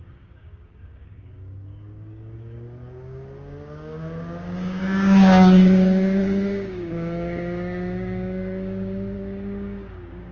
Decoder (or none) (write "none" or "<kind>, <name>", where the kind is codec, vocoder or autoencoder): codec, DAC